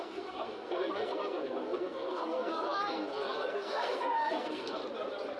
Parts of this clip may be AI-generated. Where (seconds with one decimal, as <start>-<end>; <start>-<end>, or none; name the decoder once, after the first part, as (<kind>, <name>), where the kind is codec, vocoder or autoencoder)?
0.0-4.8 (codec, SNAC)